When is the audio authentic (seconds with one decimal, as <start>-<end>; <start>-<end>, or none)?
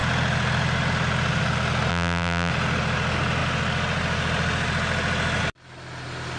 0.0-1.9; 2.5-6.4